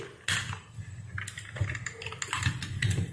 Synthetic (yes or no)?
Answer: no